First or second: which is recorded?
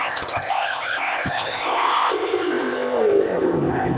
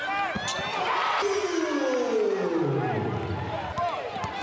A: second